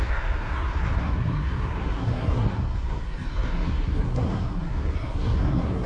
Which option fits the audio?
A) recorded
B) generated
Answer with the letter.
B